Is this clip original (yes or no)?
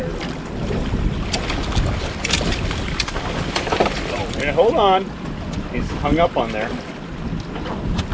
yes